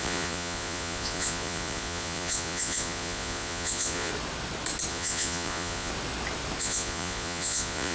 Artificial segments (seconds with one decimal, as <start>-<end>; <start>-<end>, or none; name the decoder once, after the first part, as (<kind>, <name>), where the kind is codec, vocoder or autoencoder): 0.0-4.1 (vocoder, Vocos); 4.9-5.9; 6.6-7.9